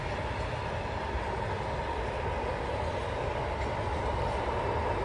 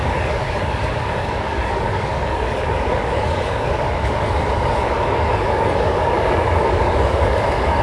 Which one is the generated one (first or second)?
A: second